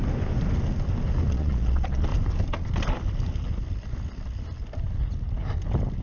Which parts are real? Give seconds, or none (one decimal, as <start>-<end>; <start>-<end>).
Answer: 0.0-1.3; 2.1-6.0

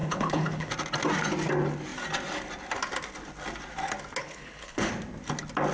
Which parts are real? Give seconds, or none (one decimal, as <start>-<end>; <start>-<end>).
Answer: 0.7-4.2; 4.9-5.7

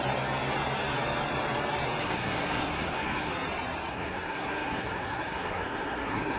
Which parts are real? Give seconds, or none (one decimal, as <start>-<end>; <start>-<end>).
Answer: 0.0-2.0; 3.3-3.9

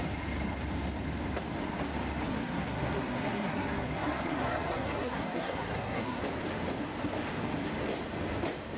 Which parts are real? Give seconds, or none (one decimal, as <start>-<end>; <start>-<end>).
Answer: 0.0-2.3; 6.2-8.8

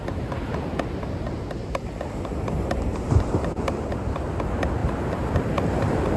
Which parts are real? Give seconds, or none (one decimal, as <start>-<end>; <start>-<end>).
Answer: 0.0-2.9; 3.9-4.8